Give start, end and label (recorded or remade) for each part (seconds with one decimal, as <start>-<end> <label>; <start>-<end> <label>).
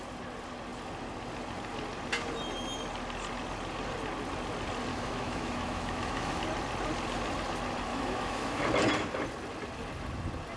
0.0-4.9 recorded; 4.9-6.4 remade; 6.4-7.9 recorded; 7.9-8.6 remade; 8.6-10.6 recorded